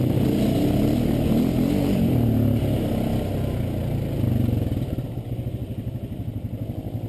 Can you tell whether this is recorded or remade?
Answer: recorded